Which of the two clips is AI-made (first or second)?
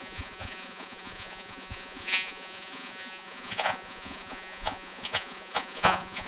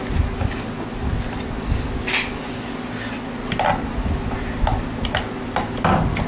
first